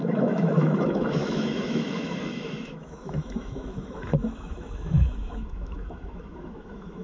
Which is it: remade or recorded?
remade